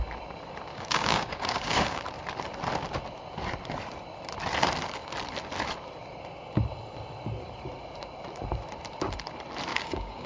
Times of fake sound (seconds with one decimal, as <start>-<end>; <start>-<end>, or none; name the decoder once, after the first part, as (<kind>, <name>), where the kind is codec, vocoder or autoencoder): 0.7-2.0 (codec, DAC); 9.7-10.3